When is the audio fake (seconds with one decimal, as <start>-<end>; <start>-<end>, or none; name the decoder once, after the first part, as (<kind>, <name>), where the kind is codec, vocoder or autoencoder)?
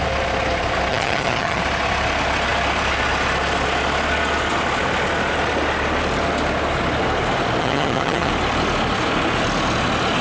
0.9-1.6 (vocoder, HiFi-GAN); 7.6-8.3